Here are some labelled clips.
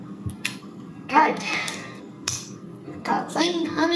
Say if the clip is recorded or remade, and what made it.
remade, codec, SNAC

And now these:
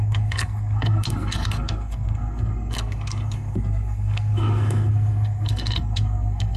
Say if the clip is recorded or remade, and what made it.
remade, codec, SNAC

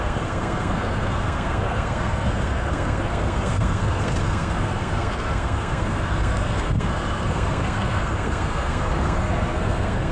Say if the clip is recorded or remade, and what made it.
remade, codec, SNAC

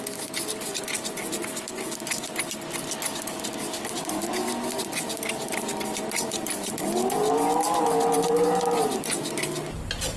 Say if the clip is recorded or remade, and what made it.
recorded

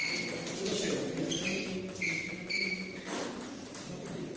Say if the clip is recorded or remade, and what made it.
recorded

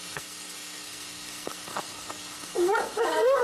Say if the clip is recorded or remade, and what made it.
remade, codec, SNAC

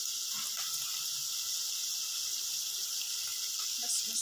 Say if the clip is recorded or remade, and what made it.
recorded